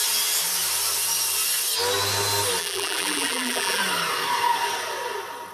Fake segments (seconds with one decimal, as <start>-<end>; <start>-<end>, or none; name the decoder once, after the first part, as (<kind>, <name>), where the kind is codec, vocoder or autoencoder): 2.6-3.8 (vocoder, BigVGAN v2)